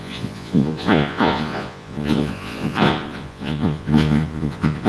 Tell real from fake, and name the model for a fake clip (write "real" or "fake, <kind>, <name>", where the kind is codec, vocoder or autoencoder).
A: fake, vocoder, Vocos